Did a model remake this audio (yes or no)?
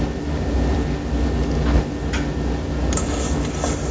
no